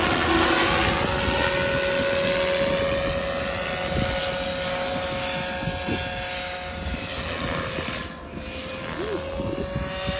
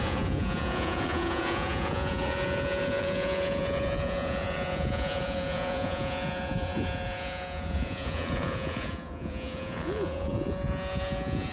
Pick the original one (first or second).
first